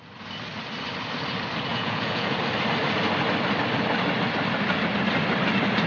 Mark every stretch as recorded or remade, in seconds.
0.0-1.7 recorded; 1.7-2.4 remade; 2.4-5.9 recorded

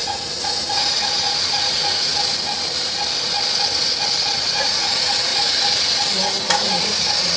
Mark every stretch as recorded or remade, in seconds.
0.0-2.1 remade; 2.1-4.3 recorded; 4.3-5.3 remade; 5.3-6.4 recorded; 6.4-7.4 remade